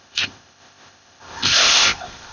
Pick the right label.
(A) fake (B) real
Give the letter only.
A